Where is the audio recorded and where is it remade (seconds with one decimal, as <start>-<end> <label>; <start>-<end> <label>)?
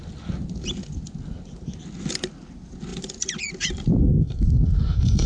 0.0-4.0 recorded; 4.0-5.3 remade